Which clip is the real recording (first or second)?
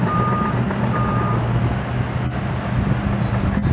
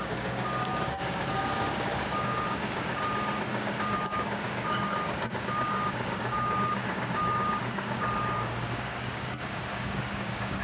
first